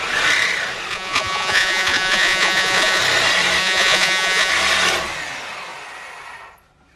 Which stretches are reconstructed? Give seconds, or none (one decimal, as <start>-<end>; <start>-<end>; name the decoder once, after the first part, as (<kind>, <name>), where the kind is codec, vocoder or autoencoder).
0.9-3.0 (vocoder, Vocos); 3.6-4.5